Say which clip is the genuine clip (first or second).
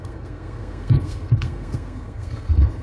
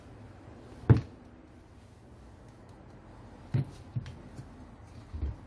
second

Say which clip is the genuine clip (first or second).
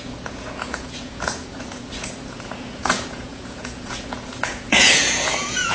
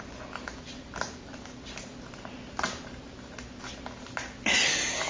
second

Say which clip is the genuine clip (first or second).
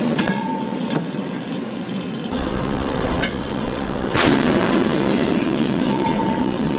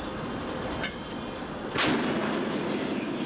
second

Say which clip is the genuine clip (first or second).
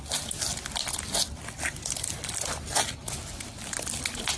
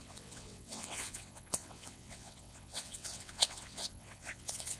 first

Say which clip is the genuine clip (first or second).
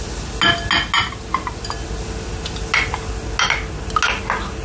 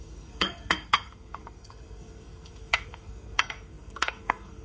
first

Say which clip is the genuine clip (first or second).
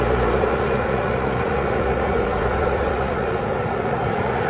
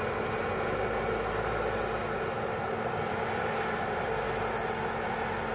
second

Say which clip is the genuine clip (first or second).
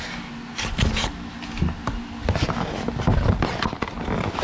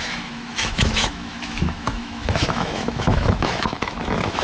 first